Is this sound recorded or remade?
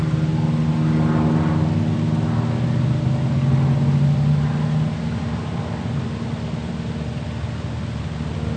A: recorded